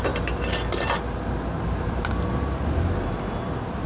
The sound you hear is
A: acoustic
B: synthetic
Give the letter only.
A